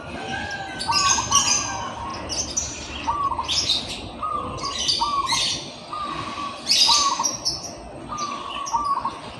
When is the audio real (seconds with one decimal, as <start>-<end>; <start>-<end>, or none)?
0.0-9.4